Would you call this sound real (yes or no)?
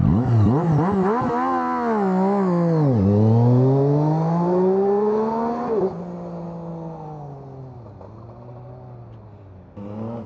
yes